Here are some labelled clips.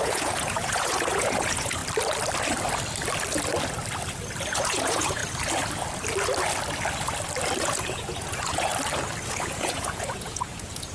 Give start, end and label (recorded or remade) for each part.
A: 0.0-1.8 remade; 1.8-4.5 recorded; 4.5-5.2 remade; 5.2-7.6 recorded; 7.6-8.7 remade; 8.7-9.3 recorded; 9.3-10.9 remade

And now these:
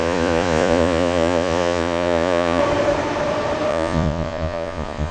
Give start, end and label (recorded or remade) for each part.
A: 0.0-2.6 remade; 2.6-3.7 recorded; 3.7-5.1 remade

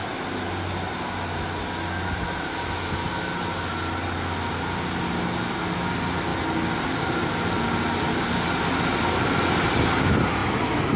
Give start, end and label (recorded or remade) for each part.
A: 0.0-11.0 recorded